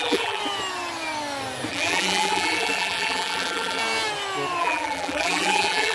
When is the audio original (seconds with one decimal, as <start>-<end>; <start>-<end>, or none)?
0.4-1.7; 3.8-4.6